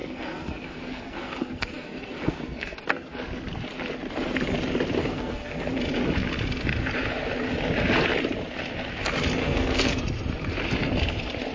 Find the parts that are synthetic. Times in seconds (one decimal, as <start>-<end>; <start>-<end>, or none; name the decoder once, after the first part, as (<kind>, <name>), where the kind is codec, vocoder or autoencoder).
0.0-3.2 (codec, SNAC); 5.0-5.6; 9.4-10.0

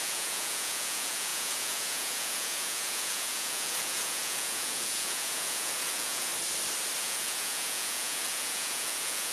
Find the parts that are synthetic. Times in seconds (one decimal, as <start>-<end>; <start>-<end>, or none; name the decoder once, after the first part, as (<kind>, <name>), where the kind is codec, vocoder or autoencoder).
0.0-6.3 (vocoder, Vocos); 7.0-9.3

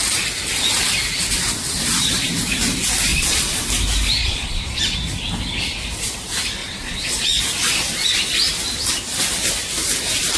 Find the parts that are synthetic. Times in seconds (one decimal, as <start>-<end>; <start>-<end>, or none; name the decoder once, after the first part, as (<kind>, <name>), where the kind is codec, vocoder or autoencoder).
3.1-3.7 (vocoder, Vocos); 4.2-4.8; 6.6-7.4

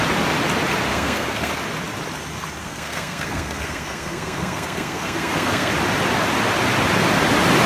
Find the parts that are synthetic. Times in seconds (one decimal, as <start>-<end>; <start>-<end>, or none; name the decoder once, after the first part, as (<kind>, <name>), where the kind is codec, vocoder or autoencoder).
0.9-1.5 (codec, SNAC); 2.6-5.7